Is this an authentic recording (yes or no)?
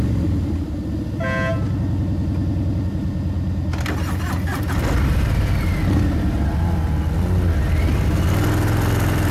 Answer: yes